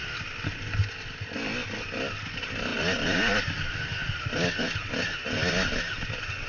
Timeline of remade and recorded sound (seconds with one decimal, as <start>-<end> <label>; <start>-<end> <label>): 0.0-6.5 recorded